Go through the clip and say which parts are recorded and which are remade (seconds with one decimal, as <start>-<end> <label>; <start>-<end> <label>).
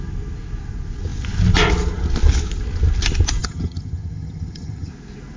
0.0-3.4 recorded; 3.4-4.9 remade; 4.9-5.4 recorded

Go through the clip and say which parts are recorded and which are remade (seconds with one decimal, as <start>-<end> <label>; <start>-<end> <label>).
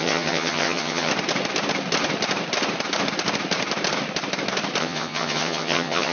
0.0-1.1 remade; 1.1-4.8 recorded; 4.8-6.1 remade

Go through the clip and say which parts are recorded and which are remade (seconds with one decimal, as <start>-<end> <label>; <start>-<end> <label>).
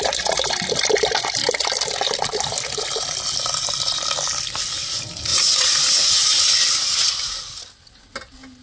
0.0-5.3 recorded; 5.3-6.4 remade; 6.4-8.6 recorded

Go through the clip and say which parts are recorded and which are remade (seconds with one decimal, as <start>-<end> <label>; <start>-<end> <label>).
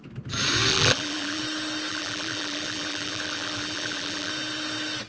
0.0-0.7 recorded; 0.7-1.4 remade; 1.4-1.9 recorded; 1.9-4.3 remade; 4.3-5.1 recorded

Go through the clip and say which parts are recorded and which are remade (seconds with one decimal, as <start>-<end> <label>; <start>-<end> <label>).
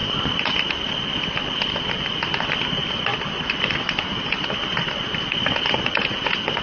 0.0-6.6 recorded